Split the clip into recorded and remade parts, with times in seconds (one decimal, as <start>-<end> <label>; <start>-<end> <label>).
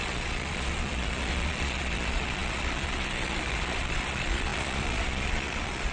0.0-5.9 remade